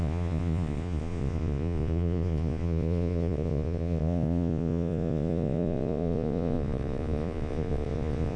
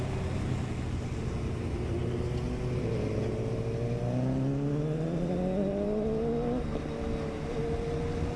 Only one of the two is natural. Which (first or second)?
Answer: second